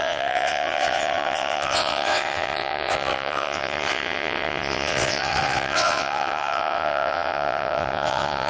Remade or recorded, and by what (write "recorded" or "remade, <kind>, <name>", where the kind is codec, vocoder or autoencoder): remade, vocoder, WaveNeXt